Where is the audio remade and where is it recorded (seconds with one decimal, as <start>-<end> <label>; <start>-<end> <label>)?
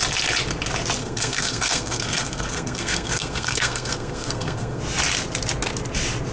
0.0-1.0 recorded; 1.0-4.8 remade; 4.8-6.3 recorded